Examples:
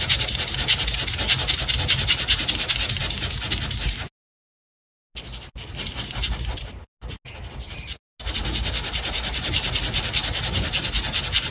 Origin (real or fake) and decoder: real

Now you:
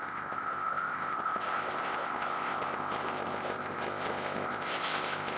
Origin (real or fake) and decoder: fake, codec, ZipCodec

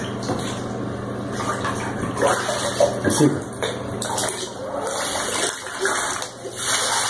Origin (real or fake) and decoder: real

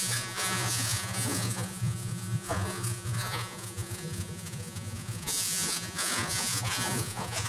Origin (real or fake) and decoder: fake, vocoder, Vocos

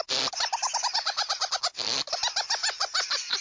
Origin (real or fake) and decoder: real